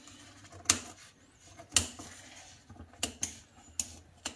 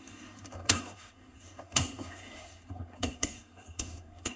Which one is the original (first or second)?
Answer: first